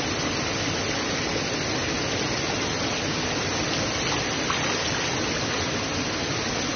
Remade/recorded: recorded